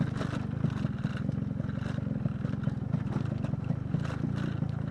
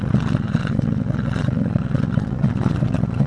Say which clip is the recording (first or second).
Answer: first